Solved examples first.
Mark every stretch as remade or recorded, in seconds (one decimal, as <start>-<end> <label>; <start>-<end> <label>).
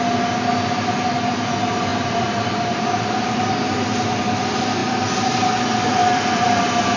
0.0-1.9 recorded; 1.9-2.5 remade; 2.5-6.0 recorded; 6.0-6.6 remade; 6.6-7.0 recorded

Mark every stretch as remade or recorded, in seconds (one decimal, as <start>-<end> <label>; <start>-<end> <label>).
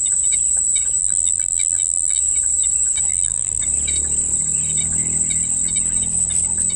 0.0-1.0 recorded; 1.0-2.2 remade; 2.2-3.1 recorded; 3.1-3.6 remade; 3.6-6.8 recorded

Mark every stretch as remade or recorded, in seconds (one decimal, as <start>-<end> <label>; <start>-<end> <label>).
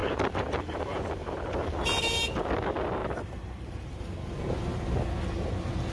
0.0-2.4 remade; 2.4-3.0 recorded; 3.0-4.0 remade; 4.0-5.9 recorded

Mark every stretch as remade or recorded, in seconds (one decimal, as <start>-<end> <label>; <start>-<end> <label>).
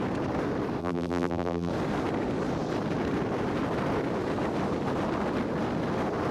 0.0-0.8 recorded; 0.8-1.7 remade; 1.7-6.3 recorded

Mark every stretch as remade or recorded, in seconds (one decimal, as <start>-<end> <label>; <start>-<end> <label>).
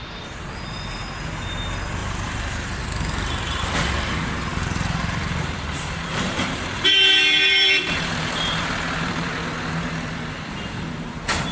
0.0-2.0 recorded; 2.0-2.8 remade; 2.8-4.5 recorded; 4.5-9.3 remade; 9.3-11.5 recorded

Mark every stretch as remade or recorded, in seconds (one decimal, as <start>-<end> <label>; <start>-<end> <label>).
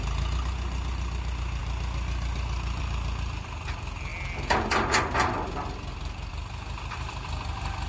0.0-7.9 recorded